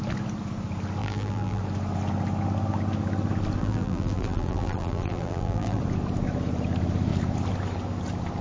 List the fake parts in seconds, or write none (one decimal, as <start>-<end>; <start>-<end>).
1.0-1.6; 3.6-5.8